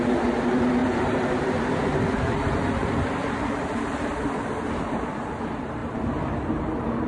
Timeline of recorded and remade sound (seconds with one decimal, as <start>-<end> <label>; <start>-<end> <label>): 0.0-7.1 remade